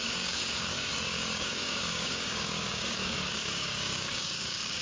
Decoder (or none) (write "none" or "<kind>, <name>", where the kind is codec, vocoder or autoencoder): codec, DAC